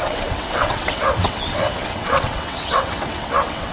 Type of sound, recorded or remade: remade